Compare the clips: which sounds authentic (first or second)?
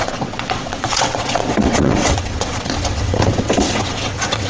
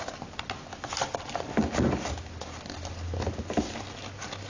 second